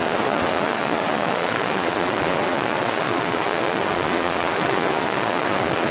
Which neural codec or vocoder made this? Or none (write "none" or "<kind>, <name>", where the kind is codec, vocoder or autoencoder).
vocoder, Vocos